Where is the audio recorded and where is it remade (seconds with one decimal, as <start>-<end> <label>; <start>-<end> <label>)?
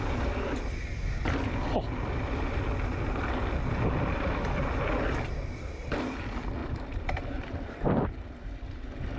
0.0-6.6 recorded; 6.6-8.0 remade; 8.0-9.2 recorded